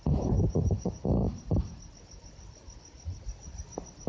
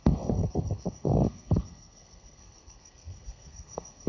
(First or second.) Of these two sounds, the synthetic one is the second